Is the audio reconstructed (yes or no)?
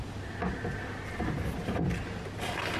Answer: no